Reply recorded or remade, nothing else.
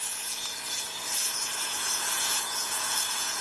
remade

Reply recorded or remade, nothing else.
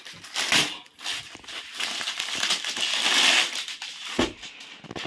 recorded